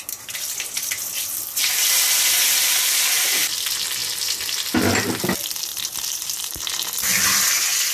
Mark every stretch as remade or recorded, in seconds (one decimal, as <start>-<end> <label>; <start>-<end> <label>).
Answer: 0.0-5.7 recorded; 5.7-6.6 remade; 6.6-7.9 recorded